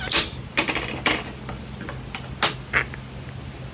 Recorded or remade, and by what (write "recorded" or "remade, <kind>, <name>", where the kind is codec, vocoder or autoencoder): recorded